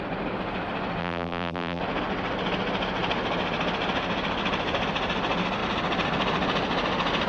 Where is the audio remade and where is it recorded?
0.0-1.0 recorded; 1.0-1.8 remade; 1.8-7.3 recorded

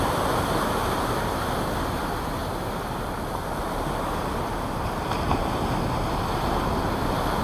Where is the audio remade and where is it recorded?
0.0-2.4 recorded; 2.4-4.3 remade; 4.3-7.4 recorded

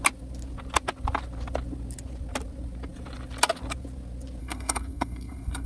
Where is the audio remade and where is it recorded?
0.0-4.4 recorded; 4.4-5.7 remade

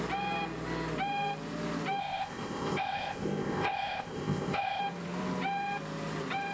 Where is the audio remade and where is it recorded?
0.0-2.0 recorded; 2.0-4.8 remade; 4.8-6.5 recorded

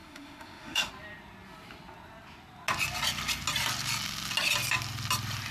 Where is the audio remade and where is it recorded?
0.0-0.9 remade; 0.9-5.5 recorded

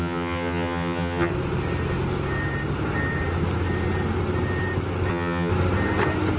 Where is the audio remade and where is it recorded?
0.0-1.3 remade; 1.3-5.1 recorded; 5.1-5.5 remade; 5.5-6.4 recorded

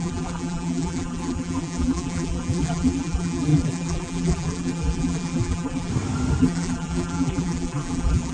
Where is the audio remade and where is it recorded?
0.0-5.9 remade; 5.9-6.4 recorded; 6.4-8.3 remade

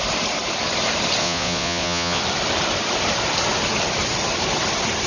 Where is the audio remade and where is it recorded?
0.0-1.2 recorded; 1.2-2.2 remade; 2.2-5.1 recorded